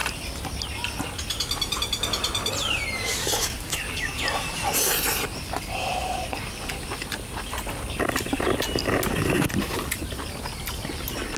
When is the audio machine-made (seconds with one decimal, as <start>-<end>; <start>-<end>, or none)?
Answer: 3.1-4.2